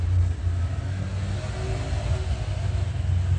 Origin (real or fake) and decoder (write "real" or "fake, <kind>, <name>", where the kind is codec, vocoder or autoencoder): real